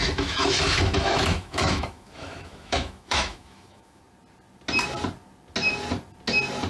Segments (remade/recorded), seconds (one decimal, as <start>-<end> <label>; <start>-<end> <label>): 0.0-4.0 remade; 4.0-6.7 recorded